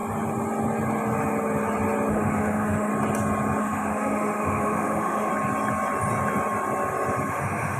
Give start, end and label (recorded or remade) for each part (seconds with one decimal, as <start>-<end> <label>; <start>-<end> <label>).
0.0-2.1 recorded; 2.1-2.9 remade; 2.9-3.6 recorded; 3.6-5.3 remade; 5.3-7.3 recorded; 7.3-7.8 remade